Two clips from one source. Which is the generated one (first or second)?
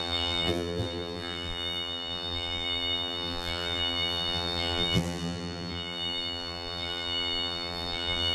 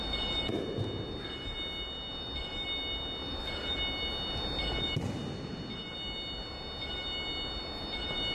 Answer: first